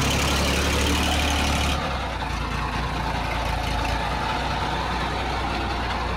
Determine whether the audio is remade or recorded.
recorded